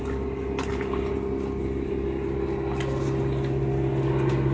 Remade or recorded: recorded